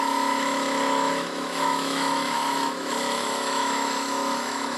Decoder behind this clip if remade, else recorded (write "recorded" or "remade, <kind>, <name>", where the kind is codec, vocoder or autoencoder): remade, autoencoder, DAC-VAE